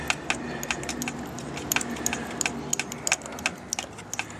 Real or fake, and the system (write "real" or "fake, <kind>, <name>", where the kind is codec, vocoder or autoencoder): real